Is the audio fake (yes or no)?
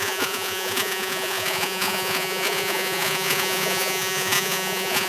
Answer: yes